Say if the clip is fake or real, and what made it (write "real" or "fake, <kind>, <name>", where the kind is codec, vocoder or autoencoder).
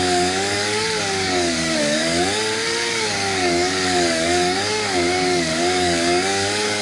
fake, codec, DAC